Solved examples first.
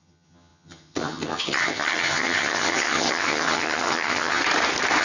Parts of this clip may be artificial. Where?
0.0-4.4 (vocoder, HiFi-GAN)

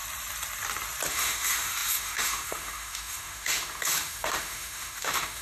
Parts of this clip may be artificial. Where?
1.1-5.4 (autoencoder, DAC-VAE)

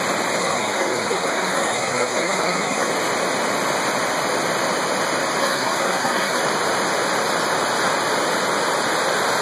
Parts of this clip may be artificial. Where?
0.4-2.9 (codec, SNAC); 5.4-6.4

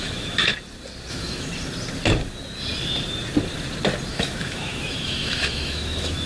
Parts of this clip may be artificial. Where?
0.0-0.5 (autoencoder, DAC-VAE); 1.1-1.5; 4.1-6.3

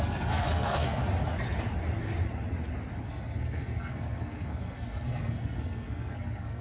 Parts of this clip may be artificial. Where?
0.0-1.0 (codec, SNAC); 3.0-6.6

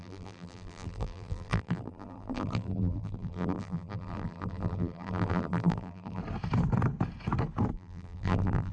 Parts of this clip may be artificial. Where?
0.0-6.2 (vocoder, BigVGAN v2); 7.7-8.7

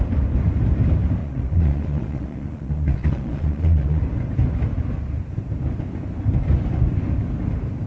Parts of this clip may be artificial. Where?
1.2-4.0 (vocoder, Vocos)